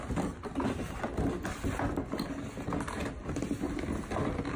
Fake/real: real